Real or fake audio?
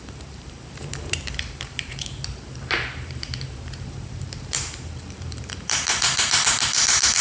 fake